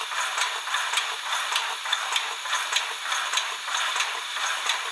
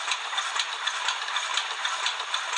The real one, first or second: first